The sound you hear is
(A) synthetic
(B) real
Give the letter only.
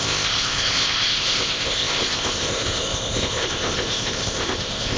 A